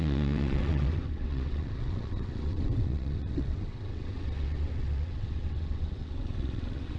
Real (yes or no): no